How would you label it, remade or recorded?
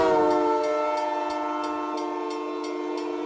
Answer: recorded